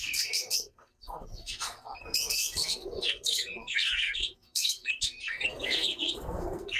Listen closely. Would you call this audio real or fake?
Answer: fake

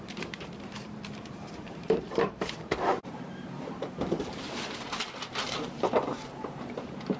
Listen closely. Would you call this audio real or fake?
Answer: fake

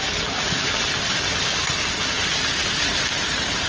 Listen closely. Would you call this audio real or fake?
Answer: real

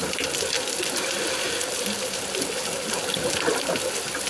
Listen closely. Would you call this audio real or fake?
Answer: real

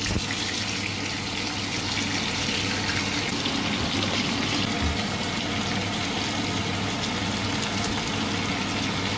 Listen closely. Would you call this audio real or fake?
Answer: real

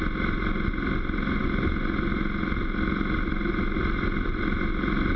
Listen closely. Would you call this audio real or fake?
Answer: real